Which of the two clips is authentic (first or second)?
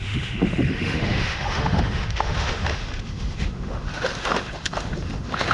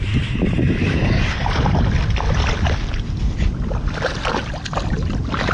second